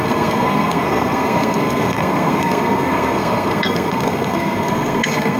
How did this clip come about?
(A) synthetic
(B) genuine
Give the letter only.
A